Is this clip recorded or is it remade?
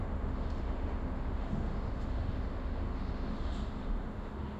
remade